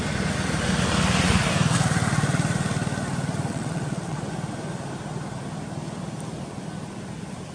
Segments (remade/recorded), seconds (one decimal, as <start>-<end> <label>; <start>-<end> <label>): 0.0-3.5 recorded; 3.5-4.2 remade; 4.2-7.5 recorded